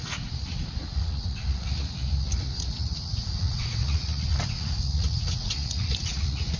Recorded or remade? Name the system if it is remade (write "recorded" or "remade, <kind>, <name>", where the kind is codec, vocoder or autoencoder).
remade, vocoder, Vocos